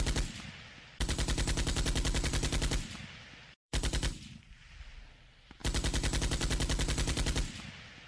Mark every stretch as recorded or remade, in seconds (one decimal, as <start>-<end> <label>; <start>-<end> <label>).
0.0-5.6 remade; 5.6-6.2 recorded; 6.2-8.1 remade